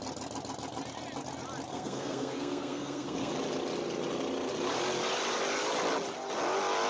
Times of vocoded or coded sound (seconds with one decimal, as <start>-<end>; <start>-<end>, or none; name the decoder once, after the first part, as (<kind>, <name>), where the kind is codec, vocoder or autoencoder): 1.7-3.3 (codec, SNAC)